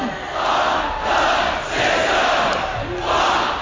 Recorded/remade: recorded